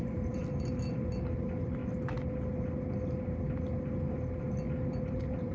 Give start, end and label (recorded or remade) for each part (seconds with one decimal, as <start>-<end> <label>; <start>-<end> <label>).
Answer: 0.0-0.4 remade; 0.4-1.1 recorded; 1.1-1.8 remade; 1.8-5.1 recorded; 5.1-5.5 remade